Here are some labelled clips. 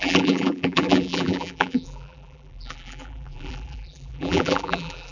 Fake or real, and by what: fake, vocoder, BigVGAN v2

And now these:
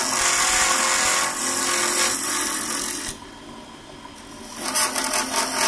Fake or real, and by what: real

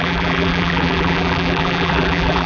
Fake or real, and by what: fake, vocoder, BigVGAN v2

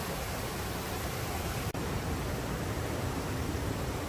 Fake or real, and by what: fake, vocoder, BigVGAN v2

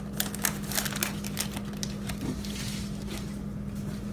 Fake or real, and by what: real